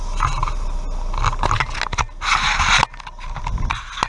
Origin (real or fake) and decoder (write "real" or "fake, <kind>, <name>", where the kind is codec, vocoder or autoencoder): real